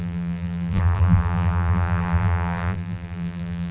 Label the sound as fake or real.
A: fake